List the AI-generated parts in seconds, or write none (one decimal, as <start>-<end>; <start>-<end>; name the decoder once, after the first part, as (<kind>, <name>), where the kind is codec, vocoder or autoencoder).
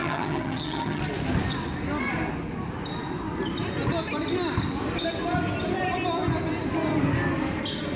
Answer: 0.0-1.0 (vocoder, HiFi-GAN)